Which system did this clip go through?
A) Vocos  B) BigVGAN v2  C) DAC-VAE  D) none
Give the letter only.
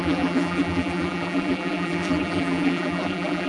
B